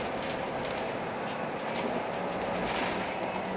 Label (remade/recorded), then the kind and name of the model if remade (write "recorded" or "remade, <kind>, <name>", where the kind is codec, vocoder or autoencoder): recorded